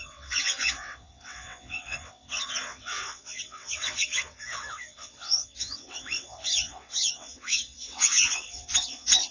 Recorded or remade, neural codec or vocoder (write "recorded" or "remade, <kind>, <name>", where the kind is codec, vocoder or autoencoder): remade, vocoder, WaveNeXt